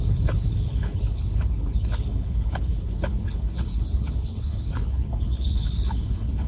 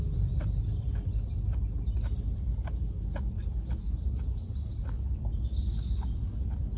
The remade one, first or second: first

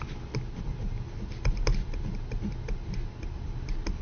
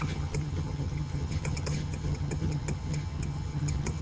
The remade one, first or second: second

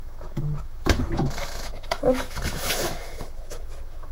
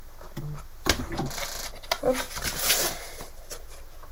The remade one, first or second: first